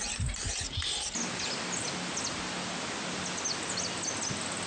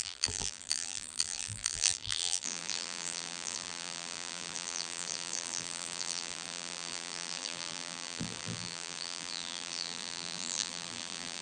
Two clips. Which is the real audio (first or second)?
first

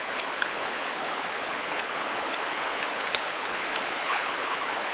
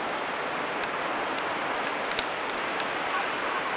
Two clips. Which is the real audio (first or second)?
second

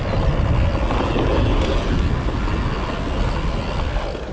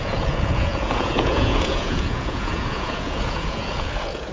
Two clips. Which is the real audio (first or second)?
first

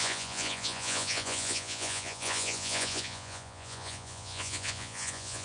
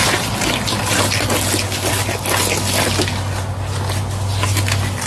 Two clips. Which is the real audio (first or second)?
second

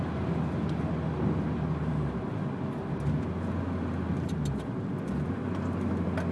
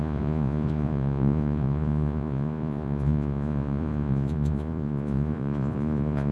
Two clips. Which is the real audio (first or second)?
first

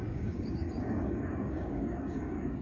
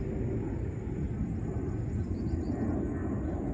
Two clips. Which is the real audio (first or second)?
second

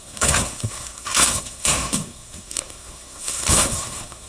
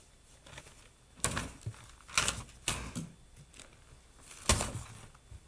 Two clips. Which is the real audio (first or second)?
second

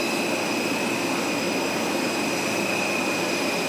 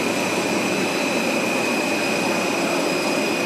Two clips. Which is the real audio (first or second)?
first